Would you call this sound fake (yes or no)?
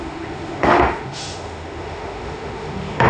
yes